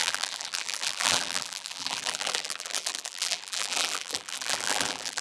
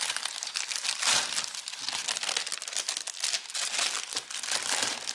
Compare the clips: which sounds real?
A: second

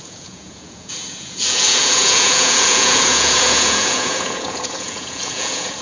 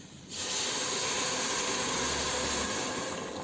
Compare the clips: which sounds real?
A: second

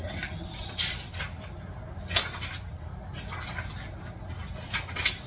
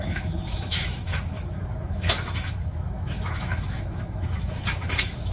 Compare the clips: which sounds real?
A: first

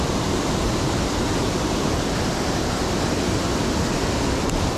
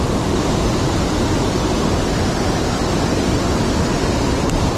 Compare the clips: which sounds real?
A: second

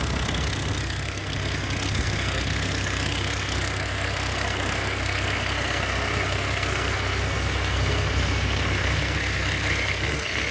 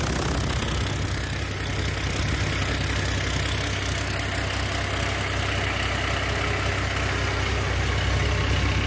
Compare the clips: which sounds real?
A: second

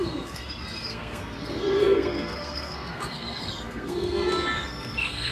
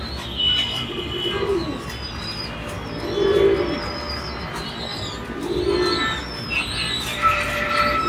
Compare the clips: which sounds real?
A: second